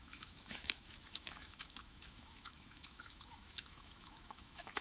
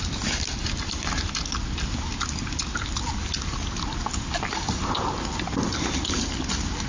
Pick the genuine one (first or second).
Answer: second